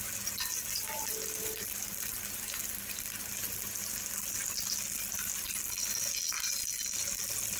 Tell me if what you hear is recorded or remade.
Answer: recorded